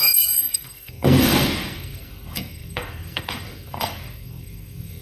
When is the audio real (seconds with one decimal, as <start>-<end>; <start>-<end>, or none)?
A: none